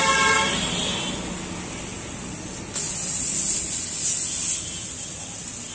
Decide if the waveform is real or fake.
real